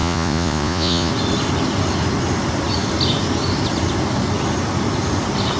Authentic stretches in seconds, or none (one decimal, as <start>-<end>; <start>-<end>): 1.1-5.6